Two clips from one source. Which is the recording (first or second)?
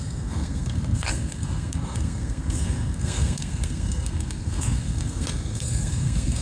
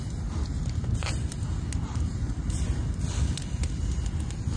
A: second